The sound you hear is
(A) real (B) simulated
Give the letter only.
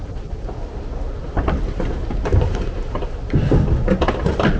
A